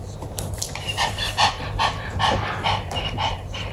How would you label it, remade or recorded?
remade